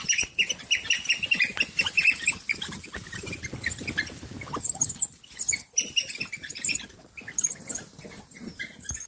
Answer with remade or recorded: recorded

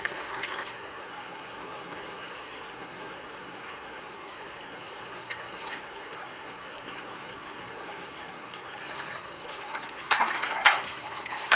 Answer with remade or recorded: remade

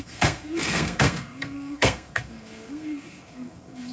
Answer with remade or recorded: remade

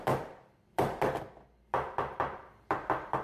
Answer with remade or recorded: remade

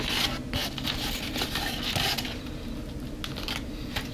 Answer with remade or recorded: recorded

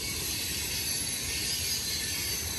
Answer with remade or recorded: recorded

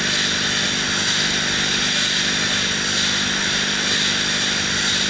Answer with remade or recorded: recorded